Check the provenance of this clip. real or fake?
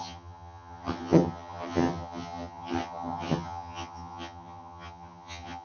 fake